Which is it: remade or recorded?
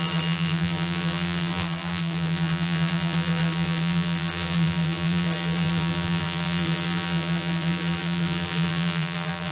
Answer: remade